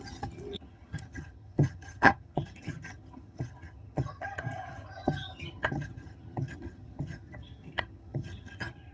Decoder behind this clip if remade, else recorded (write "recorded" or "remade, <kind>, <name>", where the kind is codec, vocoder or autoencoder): remade, vocoder, HiFi-GAN